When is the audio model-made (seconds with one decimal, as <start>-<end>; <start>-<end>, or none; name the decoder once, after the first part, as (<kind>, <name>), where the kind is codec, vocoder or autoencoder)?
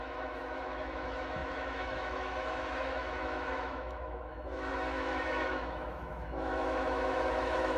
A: 0.0-7.8 (autoencoder, DAC-VAE)